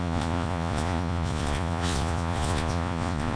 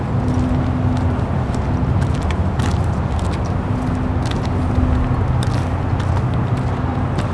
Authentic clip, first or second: second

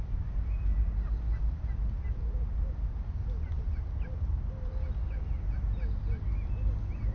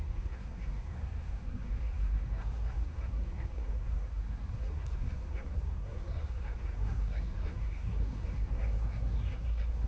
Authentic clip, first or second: first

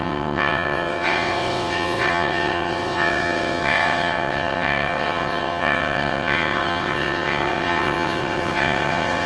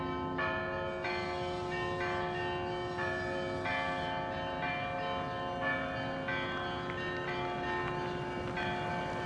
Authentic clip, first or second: second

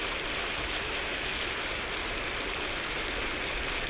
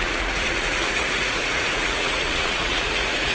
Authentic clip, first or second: first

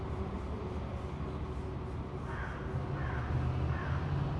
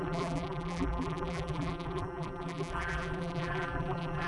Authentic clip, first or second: first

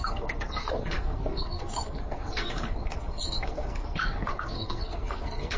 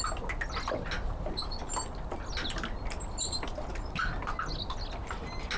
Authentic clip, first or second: second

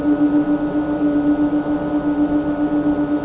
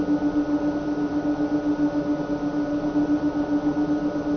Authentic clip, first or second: first